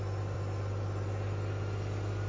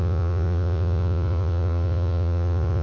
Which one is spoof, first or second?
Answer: second